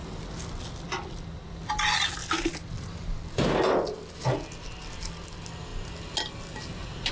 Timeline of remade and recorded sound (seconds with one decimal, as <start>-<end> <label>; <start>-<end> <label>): 0.0-2.5 recorded; 2.5-3.5 remade; 3.5-7.1 recorded